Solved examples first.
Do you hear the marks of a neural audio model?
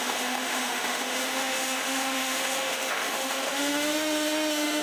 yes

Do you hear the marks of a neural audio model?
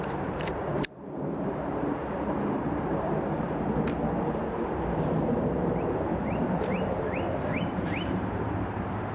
yes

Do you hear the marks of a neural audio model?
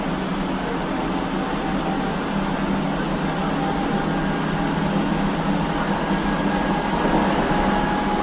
no